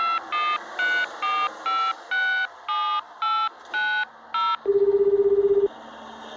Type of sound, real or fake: real